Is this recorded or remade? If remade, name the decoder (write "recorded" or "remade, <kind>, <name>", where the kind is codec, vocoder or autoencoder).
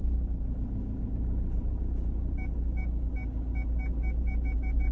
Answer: recorded